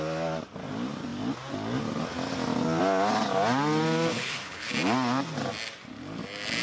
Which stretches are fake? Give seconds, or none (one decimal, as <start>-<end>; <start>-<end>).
4.1-4.7